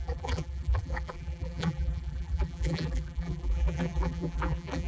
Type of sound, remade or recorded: remade